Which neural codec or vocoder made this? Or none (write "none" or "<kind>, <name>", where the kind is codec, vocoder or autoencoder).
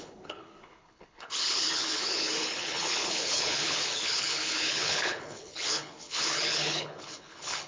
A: codec, HILCodec